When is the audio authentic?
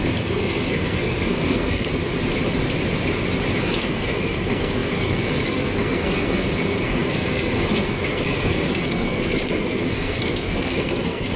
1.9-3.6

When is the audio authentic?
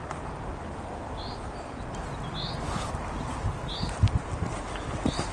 0.0-5.3